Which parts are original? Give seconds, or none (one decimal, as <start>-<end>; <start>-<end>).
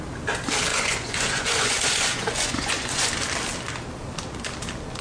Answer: 0.0-0.7; 3.1-5.0